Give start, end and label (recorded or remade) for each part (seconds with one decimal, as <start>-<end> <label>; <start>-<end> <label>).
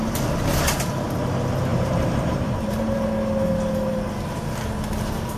0.0-1.7 recorded; 1.7-3.1 remade; 3.1-5.4 recorded